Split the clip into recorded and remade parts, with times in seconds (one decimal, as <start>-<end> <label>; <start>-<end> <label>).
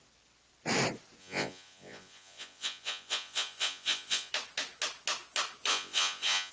0.0-1.2 recorded; 1.2-4.3 remade; 4.3-5.7 recorded; 5.7-6.5 remade